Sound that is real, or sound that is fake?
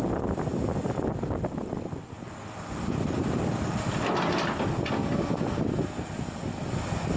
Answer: real